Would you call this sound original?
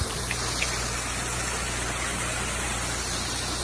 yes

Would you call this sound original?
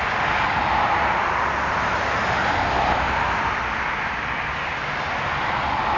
yes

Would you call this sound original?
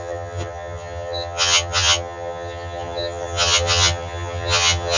no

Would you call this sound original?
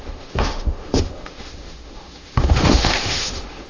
no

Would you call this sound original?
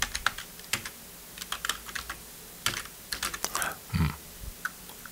yes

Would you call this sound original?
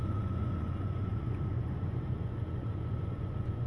no